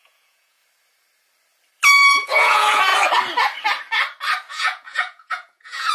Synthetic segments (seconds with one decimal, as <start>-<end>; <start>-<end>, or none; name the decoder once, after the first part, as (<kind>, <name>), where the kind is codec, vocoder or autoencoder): 0.0-0.6 (vocoder, Vocos); 1.9-2.9; 4.5-5.9